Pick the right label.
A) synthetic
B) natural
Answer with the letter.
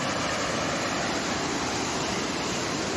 B